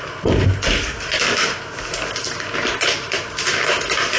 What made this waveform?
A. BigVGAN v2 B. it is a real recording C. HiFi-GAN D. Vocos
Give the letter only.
A